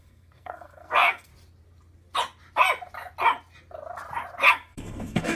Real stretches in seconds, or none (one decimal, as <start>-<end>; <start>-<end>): 1.3-4.5